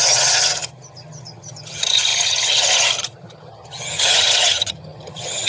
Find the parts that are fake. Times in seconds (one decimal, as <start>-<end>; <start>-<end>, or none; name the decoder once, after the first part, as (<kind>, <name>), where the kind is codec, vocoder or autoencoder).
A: 0.0-5.5 (vocoder, HiFi-GAN)